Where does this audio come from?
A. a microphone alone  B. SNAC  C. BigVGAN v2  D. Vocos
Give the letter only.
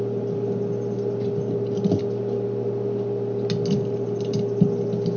A